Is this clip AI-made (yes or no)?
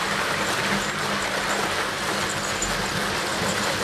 no